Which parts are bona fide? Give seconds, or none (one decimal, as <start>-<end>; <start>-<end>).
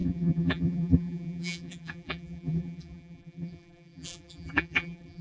none